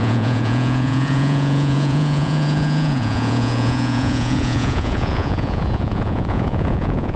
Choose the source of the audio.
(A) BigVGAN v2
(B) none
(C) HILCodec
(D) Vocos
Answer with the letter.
D